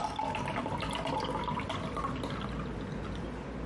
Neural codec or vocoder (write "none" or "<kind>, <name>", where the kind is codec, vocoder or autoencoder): none